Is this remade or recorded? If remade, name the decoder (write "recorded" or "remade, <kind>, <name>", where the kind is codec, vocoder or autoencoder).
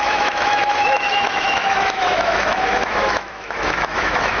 remade, autoencoder, DAC-VAE